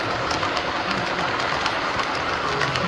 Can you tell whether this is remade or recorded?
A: recorded